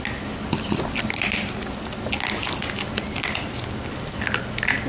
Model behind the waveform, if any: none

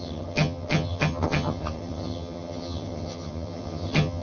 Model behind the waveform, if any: vocoder, HiFi-GAN